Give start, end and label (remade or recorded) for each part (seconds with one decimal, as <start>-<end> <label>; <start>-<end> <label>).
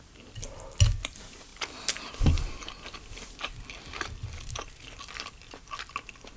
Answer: 0.0-6.4 recorded